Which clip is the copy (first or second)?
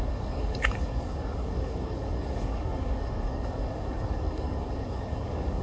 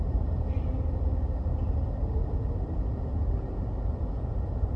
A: first